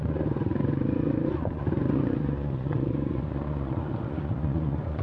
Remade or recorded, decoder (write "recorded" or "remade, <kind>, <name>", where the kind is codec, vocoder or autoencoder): remade, vocoder, Vocos